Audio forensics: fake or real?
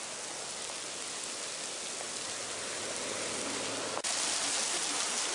real